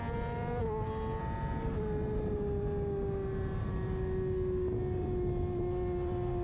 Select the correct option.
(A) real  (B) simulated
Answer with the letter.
A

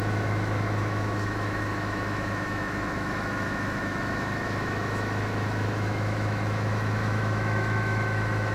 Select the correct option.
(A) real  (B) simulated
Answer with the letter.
B